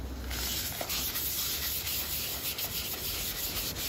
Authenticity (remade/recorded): recorded